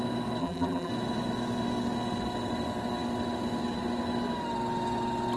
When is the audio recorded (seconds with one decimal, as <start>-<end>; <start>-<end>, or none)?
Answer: 0.0-0.4; 0.9-5.4